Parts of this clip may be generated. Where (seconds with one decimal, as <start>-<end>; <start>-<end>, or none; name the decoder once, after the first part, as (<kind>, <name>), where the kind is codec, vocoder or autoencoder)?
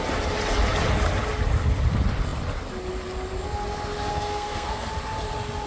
4.1-4.9 (codec, SNAC)